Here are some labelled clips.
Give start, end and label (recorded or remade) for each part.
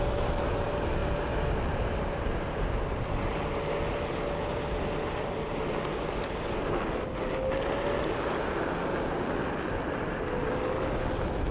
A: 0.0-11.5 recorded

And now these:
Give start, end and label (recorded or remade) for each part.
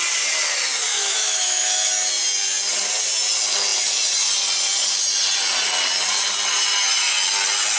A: 0.0-0.9 recorded; 0.9-1.9 remade; 1.9-7.8 recorded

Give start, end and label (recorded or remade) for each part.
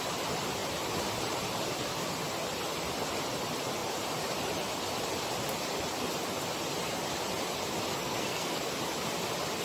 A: 0.0-7.9 recorded; 7.9-8.6 remade; 8.6-9.6 recorded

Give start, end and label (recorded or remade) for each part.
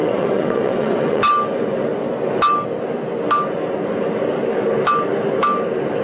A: 0.0-1.2 remade; 1.2-6.0 recorded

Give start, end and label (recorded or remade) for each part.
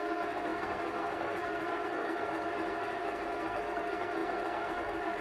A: 0.0-5.2 remade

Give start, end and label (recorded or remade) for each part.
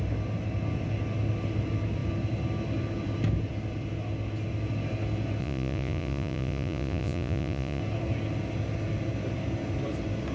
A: 0.0-5.4 recorded; 5.4-7.8 remade; 7.8-10.3 recorded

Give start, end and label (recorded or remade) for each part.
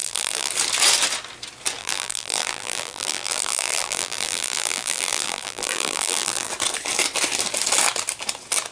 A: 0.0-0.5 remade; 0.5-1.8 recorded; 1.8-6.5 remade; 6.5-8.7 recorded